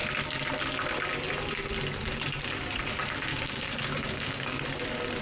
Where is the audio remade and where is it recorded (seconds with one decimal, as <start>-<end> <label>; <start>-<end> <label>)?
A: 0.0-3.3 recorded; 3.3-4.6 remade; 4.6-5.2 recorded